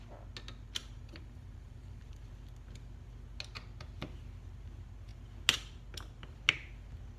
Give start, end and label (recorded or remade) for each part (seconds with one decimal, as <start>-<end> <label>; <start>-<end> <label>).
0.0-0.8 recorded; 0.8-2.3 remade; 2.3-7.2 recorded